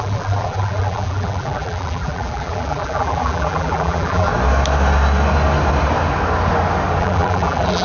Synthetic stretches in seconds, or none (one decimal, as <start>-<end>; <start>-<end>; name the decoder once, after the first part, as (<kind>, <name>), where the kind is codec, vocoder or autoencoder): 0.0-4.3 (vocoder, BigVGAN v2); 7.0-7.8